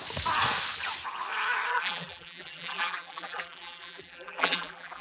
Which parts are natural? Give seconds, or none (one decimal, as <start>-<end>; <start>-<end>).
0.0-1.7